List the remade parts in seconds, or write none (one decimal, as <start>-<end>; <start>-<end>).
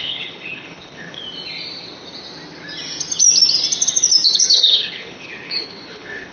0.0-1.2; 4.5-6.3